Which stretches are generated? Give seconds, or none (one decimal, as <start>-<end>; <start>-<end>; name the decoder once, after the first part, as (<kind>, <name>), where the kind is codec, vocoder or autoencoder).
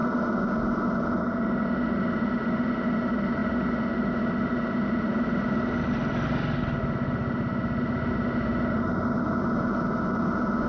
none